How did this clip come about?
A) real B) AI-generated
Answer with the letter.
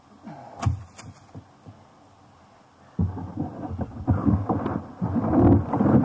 A